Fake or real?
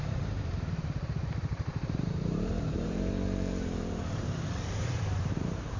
fake